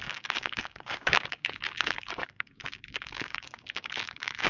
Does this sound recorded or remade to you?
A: remade